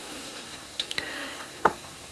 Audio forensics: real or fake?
fake